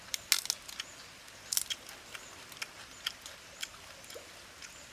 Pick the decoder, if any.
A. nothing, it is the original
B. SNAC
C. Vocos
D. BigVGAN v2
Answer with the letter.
A